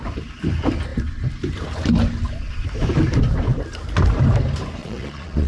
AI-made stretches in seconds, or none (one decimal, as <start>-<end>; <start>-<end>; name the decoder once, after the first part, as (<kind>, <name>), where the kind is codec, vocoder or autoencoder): 4.8-5.5 (vocoder, Vocos)

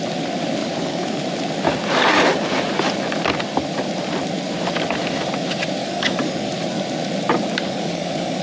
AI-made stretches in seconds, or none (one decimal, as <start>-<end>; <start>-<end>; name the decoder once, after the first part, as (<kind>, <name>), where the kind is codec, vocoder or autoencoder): 0.6-1.2 (codec, DAC); 5.8-6.5; 7.6-8.4